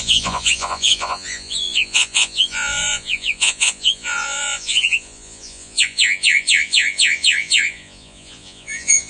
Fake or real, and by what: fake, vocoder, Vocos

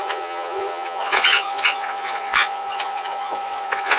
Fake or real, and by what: fake, vocoder, Vocos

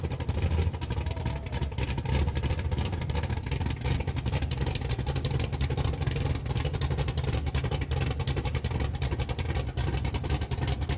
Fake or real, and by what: real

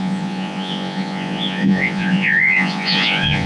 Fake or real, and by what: fake, vocoder, Vocos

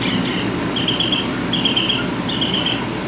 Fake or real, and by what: real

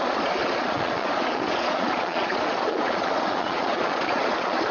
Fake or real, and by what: fake, vocoder, Vocos